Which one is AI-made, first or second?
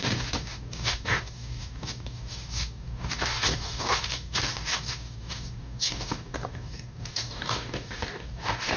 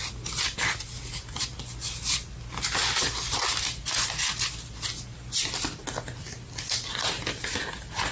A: first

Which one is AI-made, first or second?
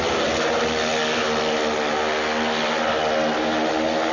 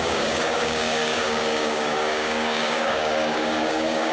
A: second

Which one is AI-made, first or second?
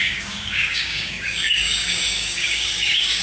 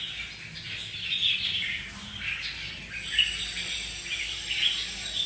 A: first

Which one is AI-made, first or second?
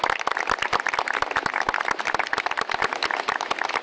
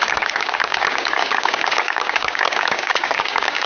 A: second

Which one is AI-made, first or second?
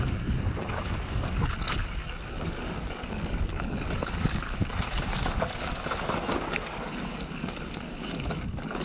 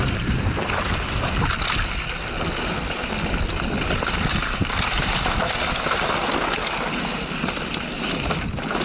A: first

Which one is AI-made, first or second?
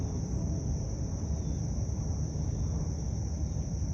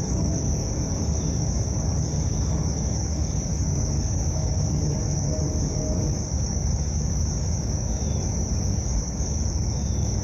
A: second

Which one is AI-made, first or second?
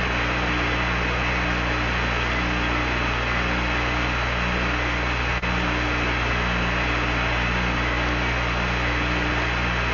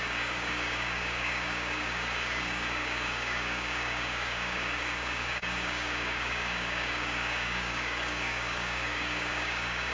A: second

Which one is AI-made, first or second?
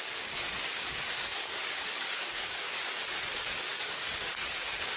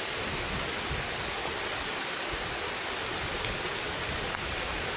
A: first